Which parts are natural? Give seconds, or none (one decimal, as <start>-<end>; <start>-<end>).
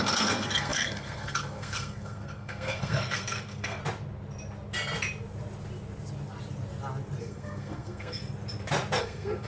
3.8-7.2; 8.2-9.0